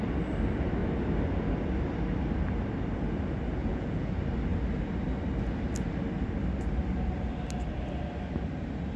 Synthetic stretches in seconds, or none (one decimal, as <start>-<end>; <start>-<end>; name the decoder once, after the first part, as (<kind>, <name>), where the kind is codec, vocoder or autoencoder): 3.6-4.1 (vocoder, Vocos)